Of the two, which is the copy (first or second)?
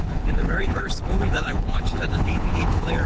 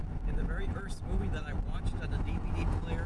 first